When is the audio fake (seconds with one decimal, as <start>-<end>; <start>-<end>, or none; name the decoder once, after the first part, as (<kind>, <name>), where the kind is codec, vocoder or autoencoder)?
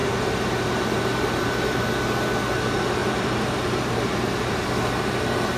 0.0-1.8 (vocoder, BigVGAN v2); 3.0-4.5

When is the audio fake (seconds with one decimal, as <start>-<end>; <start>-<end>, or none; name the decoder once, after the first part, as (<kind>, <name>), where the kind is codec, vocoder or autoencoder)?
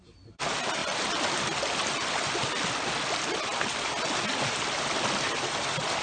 0.8-2.2 (vocoder, BigVGAN v2)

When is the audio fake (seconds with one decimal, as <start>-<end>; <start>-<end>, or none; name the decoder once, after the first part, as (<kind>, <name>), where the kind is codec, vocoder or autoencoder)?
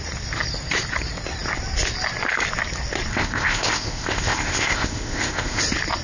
3.1-5.6 (codec, ZipCodec)